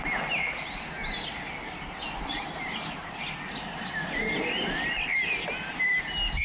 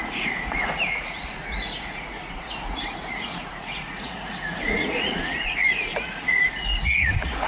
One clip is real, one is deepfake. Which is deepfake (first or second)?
second